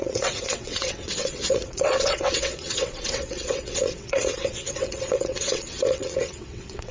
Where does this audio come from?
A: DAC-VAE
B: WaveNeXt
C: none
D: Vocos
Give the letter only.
B